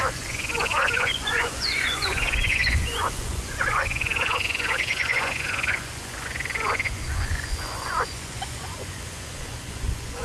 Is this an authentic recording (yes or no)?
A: no